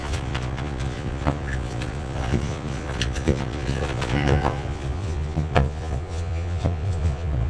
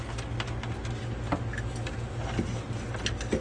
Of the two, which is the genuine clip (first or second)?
second